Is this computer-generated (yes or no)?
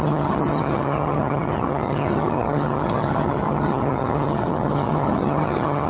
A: yes